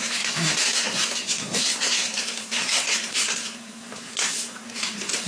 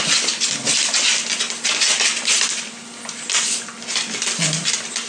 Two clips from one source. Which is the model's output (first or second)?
first